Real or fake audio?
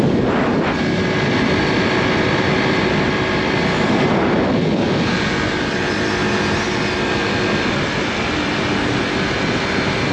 real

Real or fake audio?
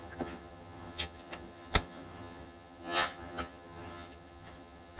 fake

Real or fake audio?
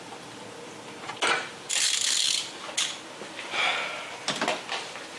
fake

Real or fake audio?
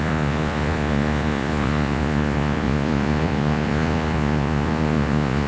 fake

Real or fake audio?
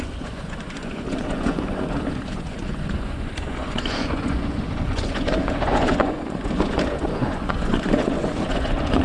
fake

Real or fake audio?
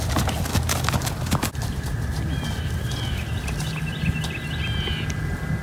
real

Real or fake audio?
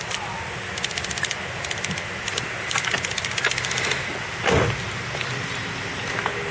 real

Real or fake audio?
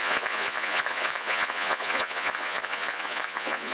fake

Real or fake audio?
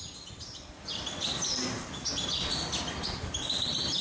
real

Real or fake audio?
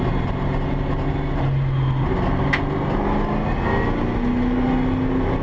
real